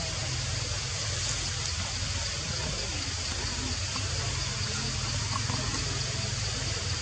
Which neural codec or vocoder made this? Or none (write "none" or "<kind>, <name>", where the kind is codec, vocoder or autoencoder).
none